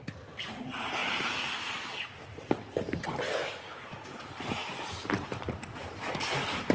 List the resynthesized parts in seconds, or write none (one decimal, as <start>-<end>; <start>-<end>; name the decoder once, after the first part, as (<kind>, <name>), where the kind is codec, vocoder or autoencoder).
none